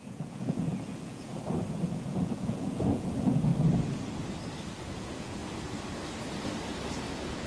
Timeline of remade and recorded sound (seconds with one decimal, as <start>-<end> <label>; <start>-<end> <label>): 0.0-1.3 remade; 1.3-1.9 recorded; 1.9-3.5 remade; 3.5-5.0 recorded; 5.0-5.4 remade; 5.4-7.1 recorded; 7.1-7.5 remade